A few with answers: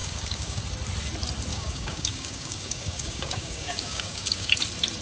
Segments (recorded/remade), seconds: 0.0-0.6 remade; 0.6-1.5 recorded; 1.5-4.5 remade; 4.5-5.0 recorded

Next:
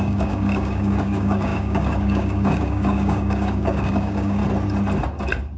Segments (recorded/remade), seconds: 0.0-4.4 remade; 4.4-5.6 recorded

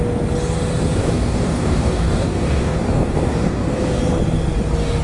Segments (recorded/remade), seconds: 0.0-1.0 recorded; 1.0-4.0 remade; 4.0-5.0 recorded

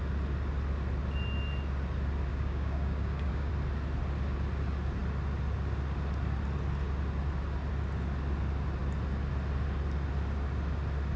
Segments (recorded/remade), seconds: 0.0-2.3 recorded; 2.3-3.5 remade; 3.5-11.2 recorded

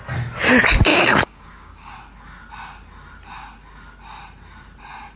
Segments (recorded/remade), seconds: 0.0-0.9 recorded; 0.9-1.9 remade; 1.9-5.2 recorded

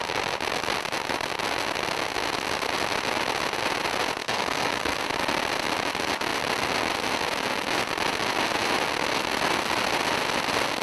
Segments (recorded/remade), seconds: 0.0-4.2 recorded; 4.2-5.0 remade; 5.0-10.8 recorded

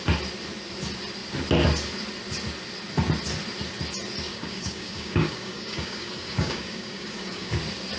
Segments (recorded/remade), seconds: 0.0-4.3 recorded; 4.3-7.6 remade; 7.6-8.0 recorded